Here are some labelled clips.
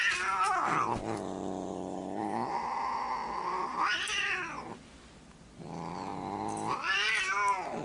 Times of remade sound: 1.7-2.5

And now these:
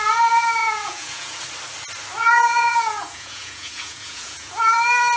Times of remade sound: 0.6-1.4; 2.2-4.6

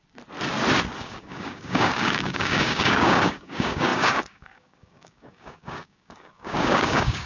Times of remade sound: 1.0-7.3